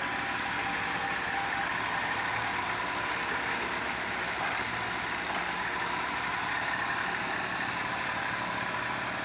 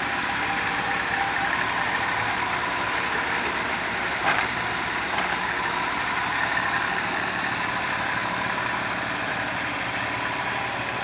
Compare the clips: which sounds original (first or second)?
first